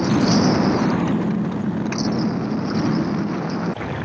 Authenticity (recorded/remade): recorded